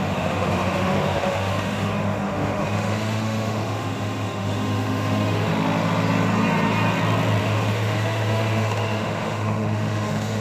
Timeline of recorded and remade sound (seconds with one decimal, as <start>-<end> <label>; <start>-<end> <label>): 0.0-5.5 remade; 5.5-7.4 recorded; 7.4-10.4 remade